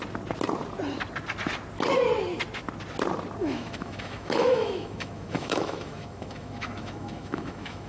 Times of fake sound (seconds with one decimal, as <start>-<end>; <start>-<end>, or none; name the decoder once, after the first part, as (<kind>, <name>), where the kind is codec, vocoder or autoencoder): 3.4-7.9 (autoencoder, DAC-VAE)